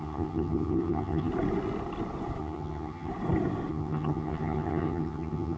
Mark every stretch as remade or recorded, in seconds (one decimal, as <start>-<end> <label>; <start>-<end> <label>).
0.0-1.3 remade; 1.3-2.4 recorded; 2.4-3.1 remade; 3.1-3.7 recorded; 3.7-5.6 remade